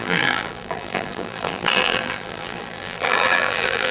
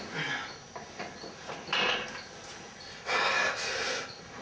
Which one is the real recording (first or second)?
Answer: second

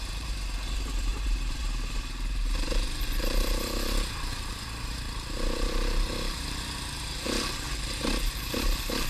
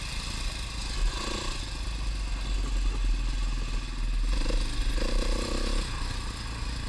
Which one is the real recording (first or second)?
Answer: second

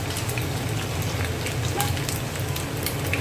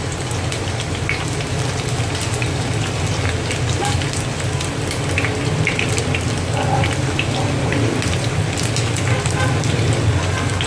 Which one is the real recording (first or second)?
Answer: first